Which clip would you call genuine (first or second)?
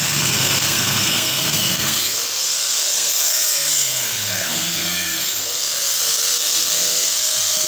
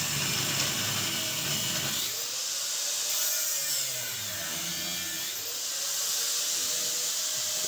second